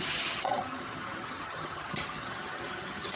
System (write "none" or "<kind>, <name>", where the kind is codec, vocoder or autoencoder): vocoder, HiFi-GAN